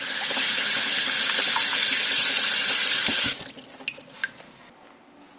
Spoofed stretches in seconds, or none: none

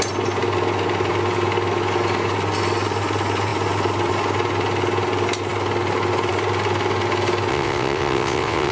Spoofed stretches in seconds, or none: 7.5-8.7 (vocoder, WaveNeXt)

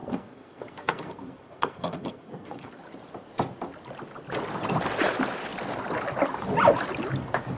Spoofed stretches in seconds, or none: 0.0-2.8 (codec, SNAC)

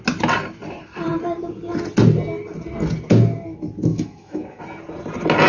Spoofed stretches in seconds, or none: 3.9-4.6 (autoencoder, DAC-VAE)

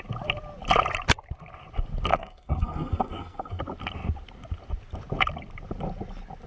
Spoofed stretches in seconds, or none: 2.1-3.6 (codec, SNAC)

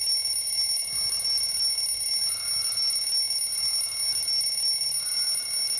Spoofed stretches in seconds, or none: none